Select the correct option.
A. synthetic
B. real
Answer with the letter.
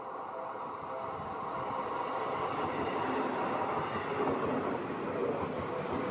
B